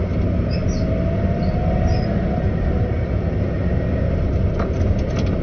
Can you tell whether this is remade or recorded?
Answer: recorded